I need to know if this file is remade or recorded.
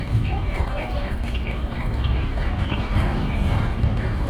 remade